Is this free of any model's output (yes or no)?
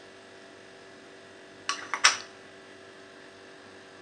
yes